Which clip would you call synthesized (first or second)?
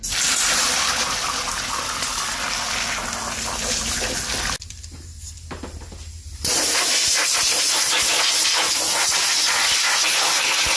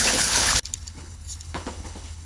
second